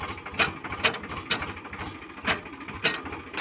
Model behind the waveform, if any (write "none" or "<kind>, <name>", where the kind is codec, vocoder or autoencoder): none